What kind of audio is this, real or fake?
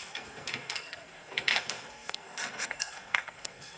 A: fake